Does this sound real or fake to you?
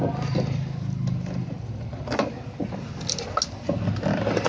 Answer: real